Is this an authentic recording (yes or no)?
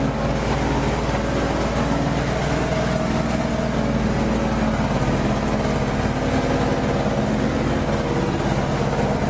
yes